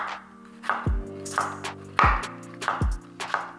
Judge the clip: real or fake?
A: real